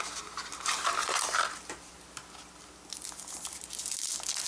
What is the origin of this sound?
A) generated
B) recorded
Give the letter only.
B